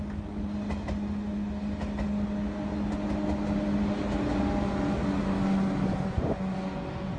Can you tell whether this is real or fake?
real